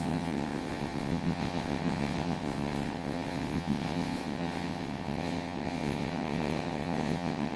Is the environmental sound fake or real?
fake